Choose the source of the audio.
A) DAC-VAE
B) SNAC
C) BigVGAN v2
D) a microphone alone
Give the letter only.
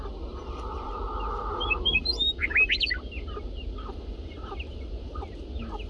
D